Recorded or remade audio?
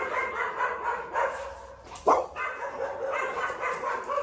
recorded